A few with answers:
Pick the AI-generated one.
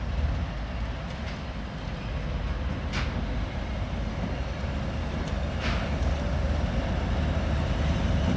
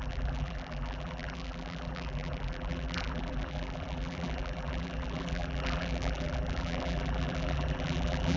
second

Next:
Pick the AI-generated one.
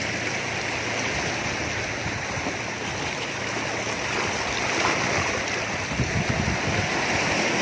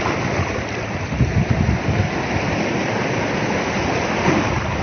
second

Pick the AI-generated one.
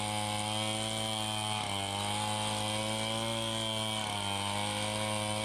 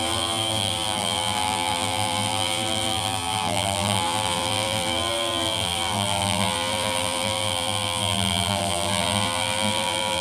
second